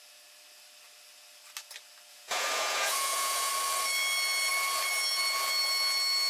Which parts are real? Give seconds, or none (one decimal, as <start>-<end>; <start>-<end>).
0.0-2.1; 3.5-6.3